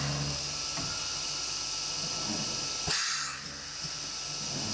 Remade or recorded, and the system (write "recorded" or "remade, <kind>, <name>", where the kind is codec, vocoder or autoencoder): recorded